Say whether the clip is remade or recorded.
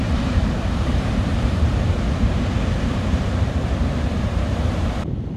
remade